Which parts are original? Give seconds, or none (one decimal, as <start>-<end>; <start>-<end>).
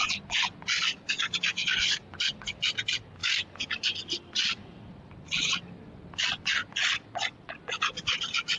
0.0-8.6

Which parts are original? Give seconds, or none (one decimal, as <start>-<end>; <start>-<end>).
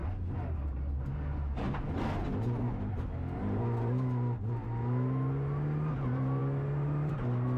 0.0-7.6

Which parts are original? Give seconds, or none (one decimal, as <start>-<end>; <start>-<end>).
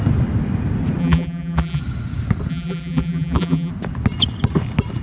0.0-1.0; 1.8-2.5; 3.7-5.0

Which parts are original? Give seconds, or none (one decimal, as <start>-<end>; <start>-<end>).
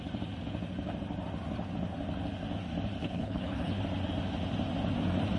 0.0-3.0; 3.8-5.4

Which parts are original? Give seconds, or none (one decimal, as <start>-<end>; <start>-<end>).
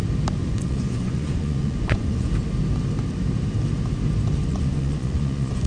0.0-0.4; 2.3-4.5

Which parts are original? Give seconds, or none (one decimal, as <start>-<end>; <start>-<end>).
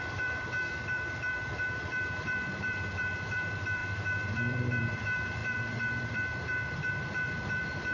none